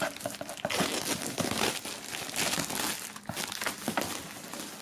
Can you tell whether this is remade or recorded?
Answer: recorded